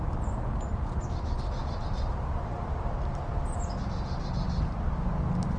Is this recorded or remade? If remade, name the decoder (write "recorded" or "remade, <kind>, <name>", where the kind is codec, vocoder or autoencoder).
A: recorded